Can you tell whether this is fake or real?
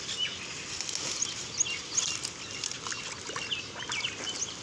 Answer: real